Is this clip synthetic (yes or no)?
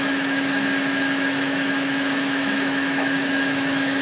yes